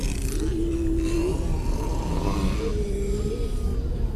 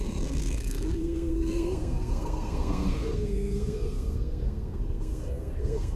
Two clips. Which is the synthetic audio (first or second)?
second